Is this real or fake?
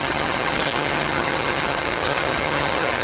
fake